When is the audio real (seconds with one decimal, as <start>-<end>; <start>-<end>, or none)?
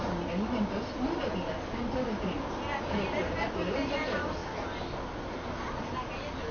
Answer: 0.0-6.5